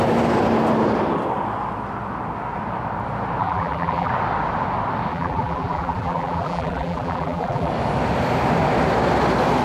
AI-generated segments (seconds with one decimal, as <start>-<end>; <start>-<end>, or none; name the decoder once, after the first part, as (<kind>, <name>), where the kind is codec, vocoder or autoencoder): 3.4-4.1 (vocoder, BigVGAN v2); 5.1-7.7